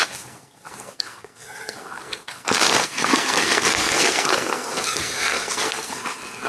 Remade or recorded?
remade